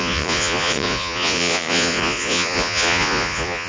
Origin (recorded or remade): remade